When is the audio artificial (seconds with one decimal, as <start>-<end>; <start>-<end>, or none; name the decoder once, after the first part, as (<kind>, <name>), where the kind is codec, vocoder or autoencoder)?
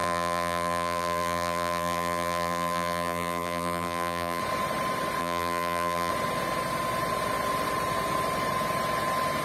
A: 0.0-4.4 (vocoder, BigVGAN v2); 5.2-6.1